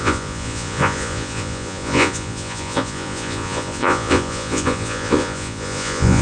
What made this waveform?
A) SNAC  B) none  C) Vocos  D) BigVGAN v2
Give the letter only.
C